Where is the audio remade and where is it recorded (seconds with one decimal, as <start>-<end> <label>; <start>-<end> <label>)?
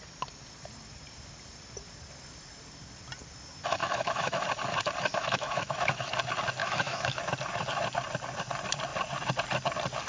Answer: 0.0-3.8 recorded; 3.8-4.4 remade; 4.4-5.1 recorded; 5.1-6.1 remade; 6.1-6.6 recorded; 6.6-7.2 remade; 7.2-10.1 recorded